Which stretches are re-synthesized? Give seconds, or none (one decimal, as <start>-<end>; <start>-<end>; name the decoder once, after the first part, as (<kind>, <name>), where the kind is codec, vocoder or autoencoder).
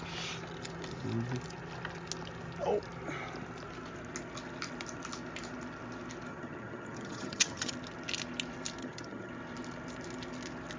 6.3-7.7 (vocoder, HiFi-GAN); 8.8-9.3